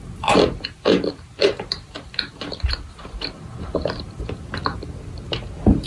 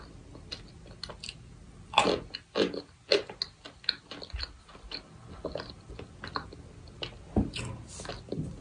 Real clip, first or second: second